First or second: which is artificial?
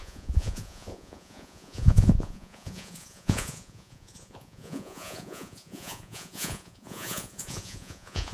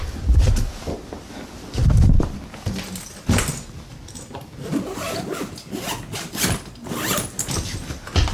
first